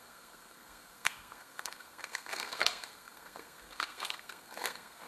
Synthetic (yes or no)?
yes